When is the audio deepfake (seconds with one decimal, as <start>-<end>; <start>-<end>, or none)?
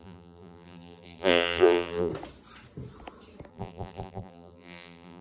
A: 0.0-2.1; 3.5-5.2